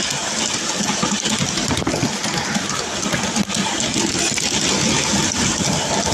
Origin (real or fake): real